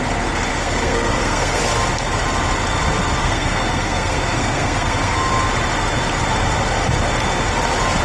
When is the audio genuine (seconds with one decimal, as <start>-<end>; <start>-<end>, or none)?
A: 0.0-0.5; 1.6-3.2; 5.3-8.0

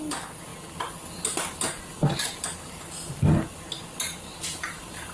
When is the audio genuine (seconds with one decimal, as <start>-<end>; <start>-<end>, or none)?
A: 0.0-5.1

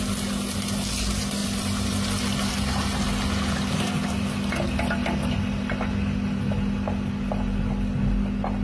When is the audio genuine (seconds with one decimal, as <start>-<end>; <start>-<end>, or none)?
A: 0.0-8.6

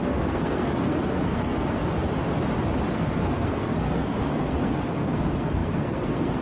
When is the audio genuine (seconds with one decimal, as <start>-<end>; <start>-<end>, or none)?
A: 1.8-2.9

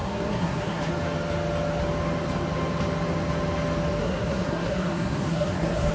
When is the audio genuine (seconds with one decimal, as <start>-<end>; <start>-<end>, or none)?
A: 0.9-4.0

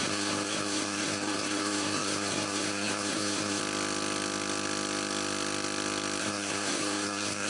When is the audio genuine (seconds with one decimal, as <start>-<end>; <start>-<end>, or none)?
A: 3.6-6.2

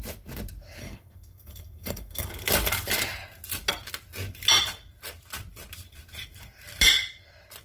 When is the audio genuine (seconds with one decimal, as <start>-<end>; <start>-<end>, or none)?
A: 0.0-0.8; 2.3-7.6